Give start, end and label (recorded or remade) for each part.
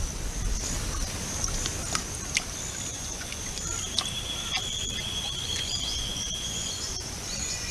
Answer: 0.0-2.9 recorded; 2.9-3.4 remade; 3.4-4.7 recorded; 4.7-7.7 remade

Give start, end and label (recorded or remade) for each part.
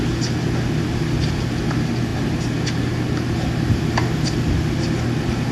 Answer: 0.0-5.5 recorded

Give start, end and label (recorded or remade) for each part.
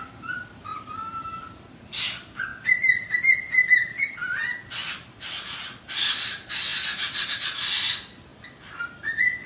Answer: 0.0-0.7 recorded; 0.7-1.5 remade; 1.5-9.5 recorded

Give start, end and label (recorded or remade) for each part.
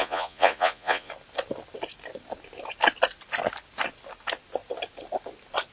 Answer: 0.0-1.1 remade; 1.1-5.7 recorded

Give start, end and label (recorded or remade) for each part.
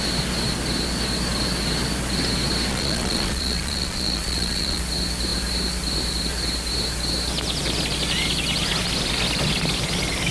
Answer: 0.0-2.7 recorded; 2.7-4.8 remade; 4.8-10.3 recorded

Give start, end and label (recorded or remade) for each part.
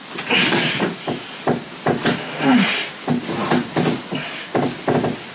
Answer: 0.0-5.3 recorded